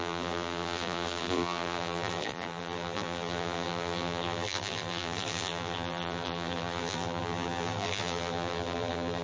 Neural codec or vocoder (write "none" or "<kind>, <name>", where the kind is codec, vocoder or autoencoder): vocoder, BigVGAN v2